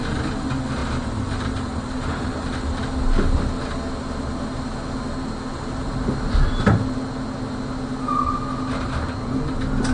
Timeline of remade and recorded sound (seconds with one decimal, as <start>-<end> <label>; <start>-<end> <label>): 0.0-0.8 recorded; 0.8-2.3 remade; 2.3-5.5 recorded; 5.5-6.4 remade; 6.4-9.9 recorded